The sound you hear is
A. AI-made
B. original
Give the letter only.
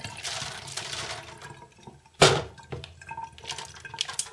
B